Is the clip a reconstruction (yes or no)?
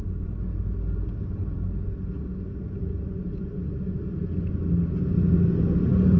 no